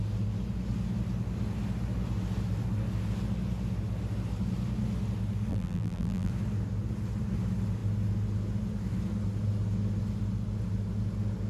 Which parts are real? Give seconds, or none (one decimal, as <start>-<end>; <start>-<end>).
0.0-5.5; 6.3-11.5